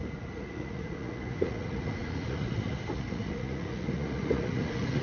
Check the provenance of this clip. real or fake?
fake